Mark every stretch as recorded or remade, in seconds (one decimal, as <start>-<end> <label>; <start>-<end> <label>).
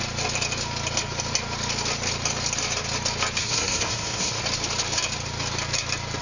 0.0-3.4 recorded; 3.4-4.4 remade; 4.4-6.2 recorded